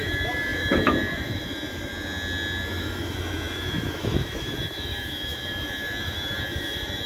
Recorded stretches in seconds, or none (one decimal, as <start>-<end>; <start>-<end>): 1.9-2.7

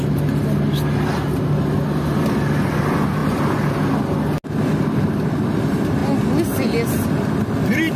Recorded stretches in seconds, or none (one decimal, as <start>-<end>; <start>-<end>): 0.0-8.0

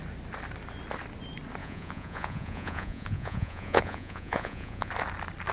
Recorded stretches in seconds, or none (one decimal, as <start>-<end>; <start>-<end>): 0.0-1.6; 4.9-5.5